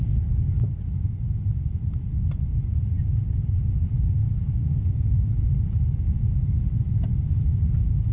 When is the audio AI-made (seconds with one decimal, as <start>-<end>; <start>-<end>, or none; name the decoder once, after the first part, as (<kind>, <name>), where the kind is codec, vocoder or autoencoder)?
4.2-5.3 (codec, DAC)